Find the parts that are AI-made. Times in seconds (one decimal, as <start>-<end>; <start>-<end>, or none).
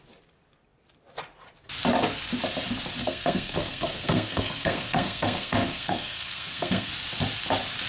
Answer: 3.0-6.9